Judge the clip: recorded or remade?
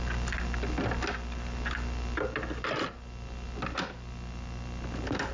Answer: recorded